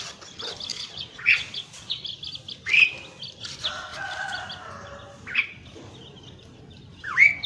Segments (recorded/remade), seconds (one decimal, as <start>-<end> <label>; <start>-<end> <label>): 0.0-0.7 recorded; 0.7-2.0 remade; 2.0-7.5 recorded